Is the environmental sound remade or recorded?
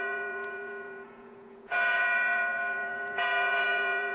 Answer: remade